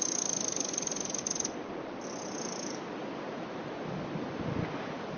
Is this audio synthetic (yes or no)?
no